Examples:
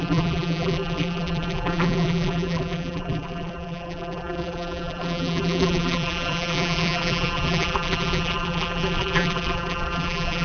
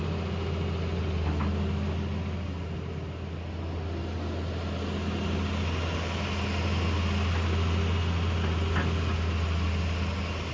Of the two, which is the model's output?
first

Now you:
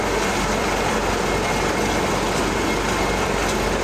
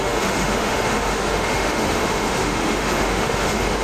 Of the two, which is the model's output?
second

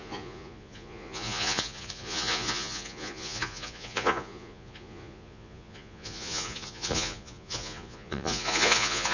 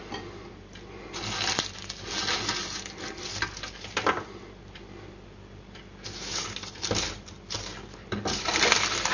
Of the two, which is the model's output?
first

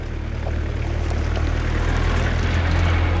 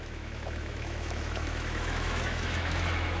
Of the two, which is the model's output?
second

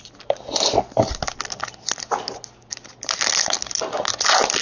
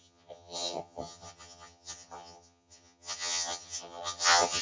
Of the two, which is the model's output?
second